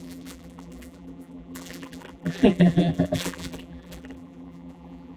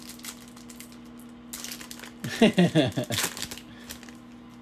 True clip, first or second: second